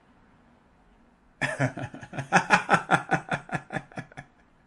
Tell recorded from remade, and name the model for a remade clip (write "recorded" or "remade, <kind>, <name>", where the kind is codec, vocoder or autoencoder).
remade, vocoder, Vocos